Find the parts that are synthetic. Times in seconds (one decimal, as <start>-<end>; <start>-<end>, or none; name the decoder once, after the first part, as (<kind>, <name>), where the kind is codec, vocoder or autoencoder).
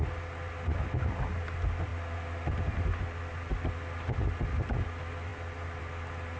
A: none